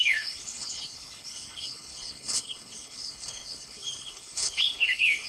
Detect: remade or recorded remade